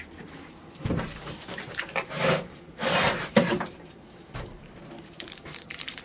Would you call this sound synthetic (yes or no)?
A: yes